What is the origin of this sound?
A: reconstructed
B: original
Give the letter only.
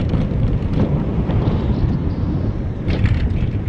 A